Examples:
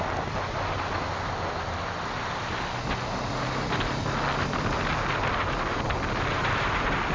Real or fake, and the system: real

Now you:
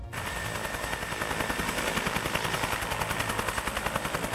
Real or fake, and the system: real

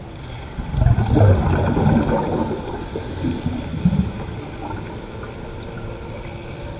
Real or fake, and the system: real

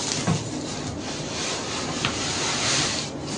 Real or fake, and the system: real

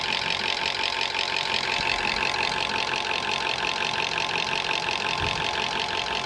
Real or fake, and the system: real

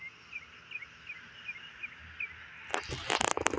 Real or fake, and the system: real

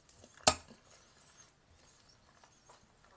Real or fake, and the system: real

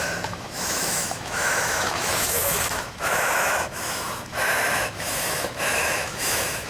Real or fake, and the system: fake, autoencoder, DAC-VAE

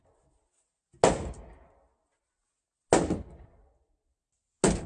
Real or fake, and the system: real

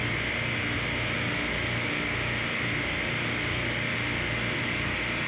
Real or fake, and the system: real